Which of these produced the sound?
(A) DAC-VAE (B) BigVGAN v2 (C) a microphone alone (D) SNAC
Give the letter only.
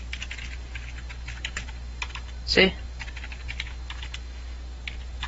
B